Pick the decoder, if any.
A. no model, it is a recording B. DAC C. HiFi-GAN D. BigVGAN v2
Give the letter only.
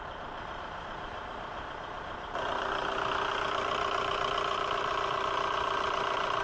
A